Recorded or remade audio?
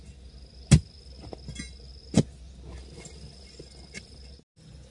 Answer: recorded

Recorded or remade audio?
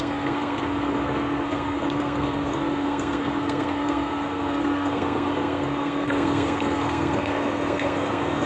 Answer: remade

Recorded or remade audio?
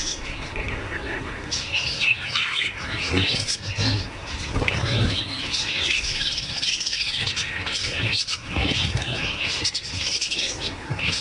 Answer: remade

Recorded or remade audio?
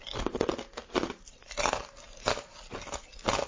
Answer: recorded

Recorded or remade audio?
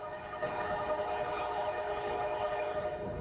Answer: remade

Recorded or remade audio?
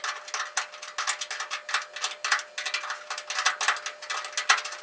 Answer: recorded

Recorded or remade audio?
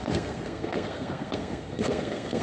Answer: remade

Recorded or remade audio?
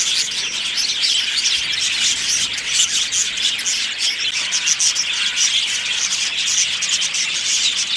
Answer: recorded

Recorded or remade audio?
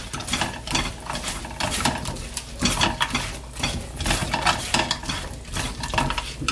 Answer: recorded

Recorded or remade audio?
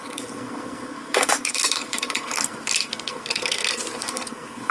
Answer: remade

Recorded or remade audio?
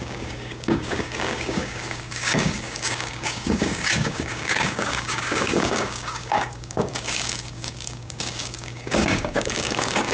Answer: remade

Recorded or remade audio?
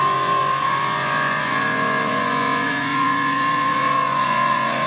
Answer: remade